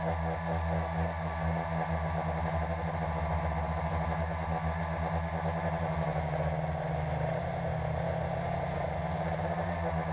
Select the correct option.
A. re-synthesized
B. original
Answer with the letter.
B